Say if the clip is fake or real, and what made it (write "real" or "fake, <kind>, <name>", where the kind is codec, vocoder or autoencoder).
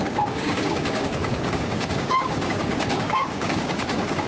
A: fake, codec, DAC